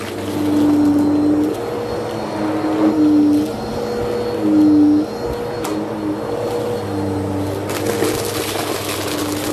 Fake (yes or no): no